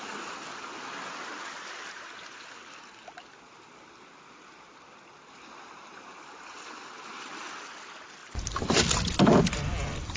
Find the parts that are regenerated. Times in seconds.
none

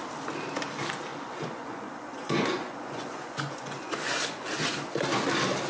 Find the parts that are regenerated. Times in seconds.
1.1-4.5 (vocoder, Vocos)

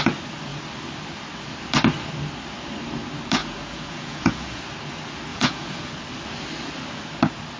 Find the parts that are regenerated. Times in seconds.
3.4-4.6 (vocoder, Vocos); 5.3-5.9

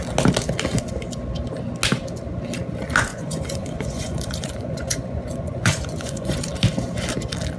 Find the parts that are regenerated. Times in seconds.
3.1-6.5 (vocoder, Vocos)

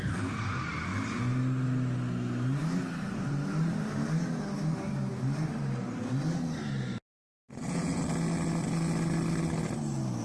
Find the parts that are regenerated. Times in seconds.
7.2-8.0 (vocoder, Vocos)

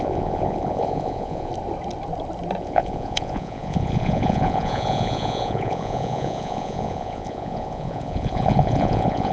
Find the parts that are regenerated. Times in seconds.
0.0-1.5 (vocoder, Vocos); 2.6-9.3

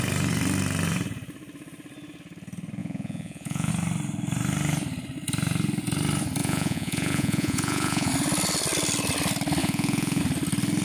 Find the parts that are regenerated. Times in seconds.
2.8-3.7 (vocoder, Vocos); 6.4-8.1; 9.6-10.2

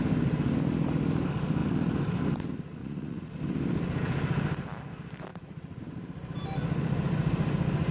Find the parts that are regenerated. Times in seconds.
2.8-3.3 (vocoder, Vocos); 5.3-5.8